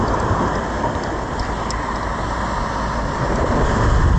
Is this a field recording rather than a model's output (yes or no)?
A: yes